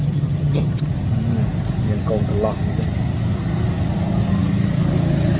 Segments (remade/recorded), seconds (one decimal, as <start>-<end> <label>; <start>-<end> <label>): 0.0-0.9 remade; 0.9-5.4 recorded